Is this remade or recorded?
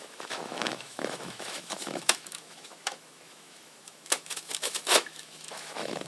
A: remade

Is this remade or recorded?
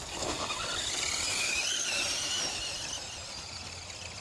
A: recorded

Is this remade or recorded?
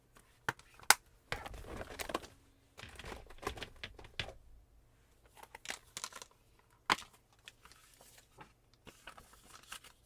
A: recorded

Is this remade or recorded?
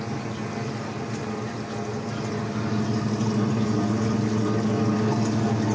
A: recorded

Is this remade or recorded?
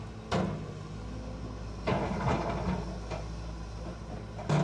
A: recorded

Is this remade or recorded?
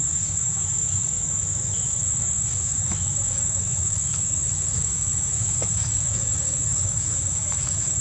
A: remade